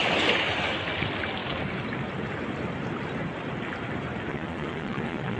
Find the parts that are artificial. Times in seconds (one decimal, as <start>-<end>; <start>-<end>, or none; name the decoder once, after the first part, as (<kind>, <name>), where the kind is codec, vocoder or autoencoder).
4.3-5.4 (vocoder, Vocos)